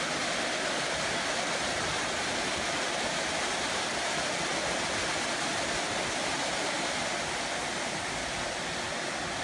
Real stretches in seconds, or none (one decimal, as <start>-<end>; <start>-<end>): 0.0-1.9; 3.9-6.2; 7.0-9.4